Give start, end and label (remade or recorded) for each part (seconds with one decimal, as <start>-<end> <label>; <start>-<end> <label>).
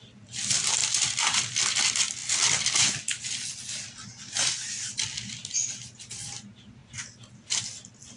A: 0.0-8.2 recorded